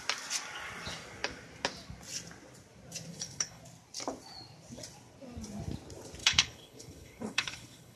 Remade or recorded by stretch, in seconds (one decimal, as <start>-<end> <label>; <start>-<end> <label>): 0.0-3.1 recorded; 3.1-3.6 remade; 3.6-6.2 recorded; 6.2-8.0 remade